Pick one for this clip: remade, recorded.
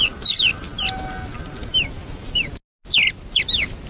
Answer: recorded